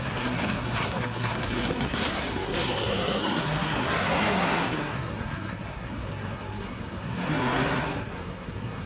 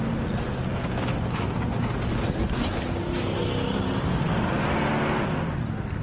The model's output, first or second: first